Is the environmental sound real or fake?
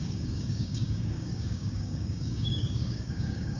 fake